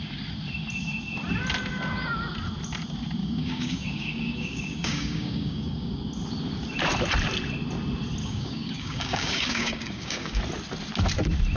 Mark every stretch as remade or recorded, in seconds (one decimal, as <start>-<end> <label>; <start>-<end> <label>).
0.0-3.2 recorded; 3.2-6.0 remade; 6.0-8.2 recorded; 8.2-10.4 remade; 10.4-11.6 recorded